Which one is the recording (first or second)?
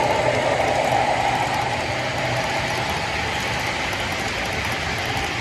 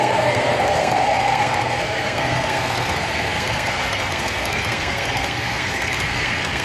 first